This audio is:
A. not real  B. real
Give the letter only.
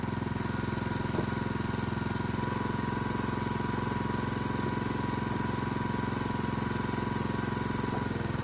B